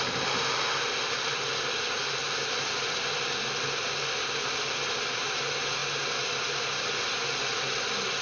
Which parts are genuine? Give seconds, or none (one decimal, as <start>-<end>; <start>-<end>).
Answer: 0.0-8.2